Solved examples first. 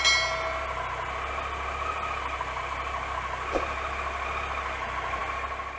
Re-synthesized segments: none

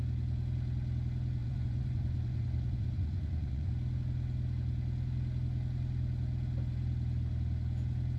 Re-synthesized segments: 1.4-3.7 (vocoder, Vocos)